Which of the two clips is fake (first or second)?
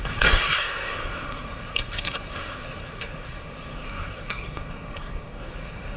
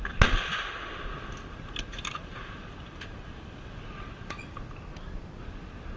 first